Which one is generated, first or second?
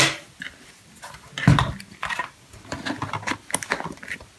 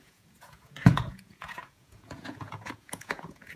second